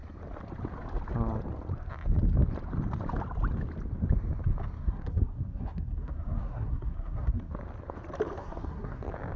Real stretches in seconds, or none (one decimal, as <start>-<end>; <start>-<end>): 0.0-4.8; 7.5-8.4; 9.0-9.4